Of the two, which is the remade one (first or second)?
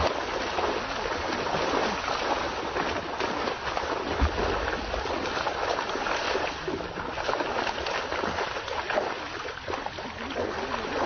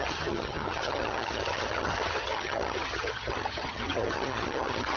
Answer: second